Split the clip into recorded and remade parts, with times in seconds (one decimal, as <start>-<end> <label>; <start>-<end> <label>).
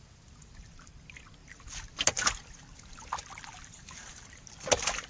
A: 0.0-5.1 recorded